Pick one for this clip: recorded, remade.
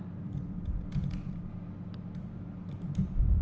recorded